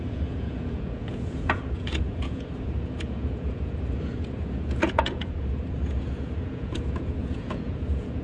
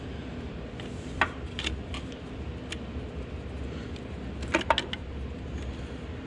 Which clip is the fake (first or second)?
first